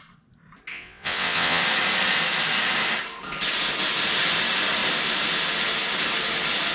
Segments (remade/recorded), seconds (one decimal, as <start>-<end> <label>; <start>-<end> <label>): 0.0-0.7 recorded; 0.7-1.6 remade; 1.6-6.7 recorded